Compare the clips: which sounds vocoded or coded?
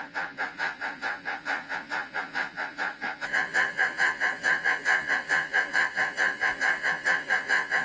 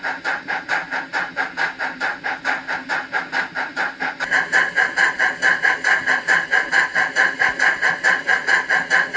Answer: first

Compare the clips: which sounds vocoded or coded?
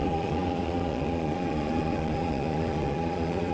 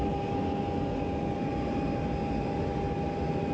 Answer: first